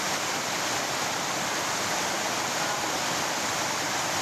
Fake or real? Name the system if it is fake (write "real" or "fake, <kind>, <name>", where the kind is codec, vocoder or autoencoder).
real